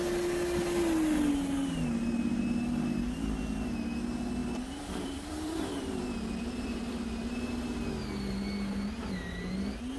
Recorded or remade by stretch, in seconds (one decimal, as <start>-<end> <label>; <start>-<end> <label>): 0.0-4.4 recorded; 4.4-7.5 remade; 7.5-10.0 recorded